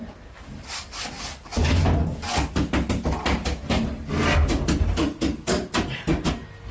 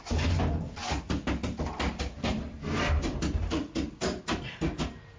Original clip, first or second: first